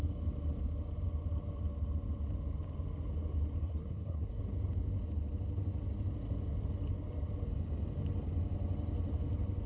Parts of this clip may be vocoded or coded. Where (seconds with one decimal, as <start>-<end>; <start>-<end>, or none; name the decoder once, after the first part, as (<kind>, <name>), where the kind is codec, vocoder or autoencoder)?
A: 3.6-4.4 (codec, SNAC)